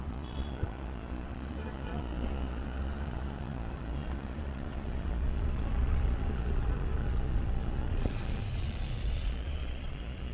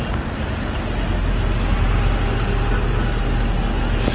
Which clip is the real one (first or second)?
second